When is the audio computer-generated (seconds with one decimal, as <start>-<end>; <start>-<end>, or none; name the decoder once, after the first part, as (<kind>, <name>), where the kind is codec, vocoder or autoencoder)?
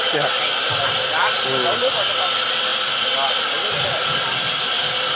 none